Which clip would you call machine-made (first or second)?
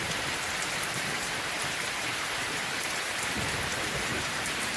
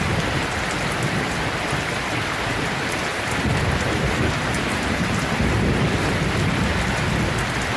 first